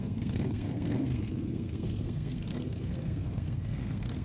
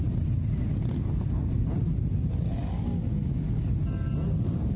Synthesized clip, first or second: first